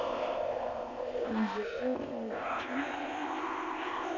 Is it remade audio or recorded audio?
remade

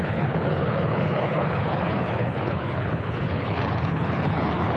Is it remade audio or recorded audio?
remade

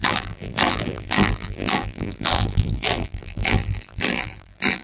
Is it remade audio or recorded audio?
remade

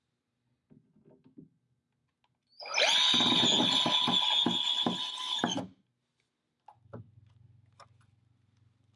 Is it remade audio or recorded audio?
recorded